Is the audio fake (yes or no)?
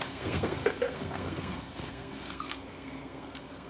yes